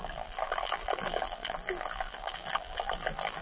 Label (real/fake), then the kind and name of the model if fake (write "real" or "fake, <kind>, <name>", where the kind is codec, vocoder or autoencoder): fake, vocoder, BigVGAN v2